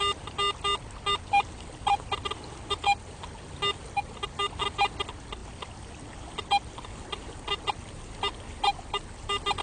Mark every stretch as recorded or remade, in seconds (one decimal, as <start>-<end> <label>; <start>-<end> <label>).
0.0-9.6 recorded